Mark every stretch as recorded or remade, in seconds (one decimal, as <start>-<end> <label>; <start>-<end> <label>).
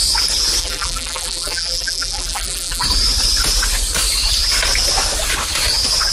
0.0-0.6 recorded; 0.6-2.8 remade; 2.8-6.1 recorded